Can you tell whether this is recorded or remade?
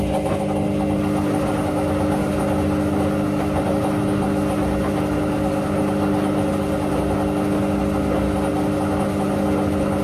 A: recorded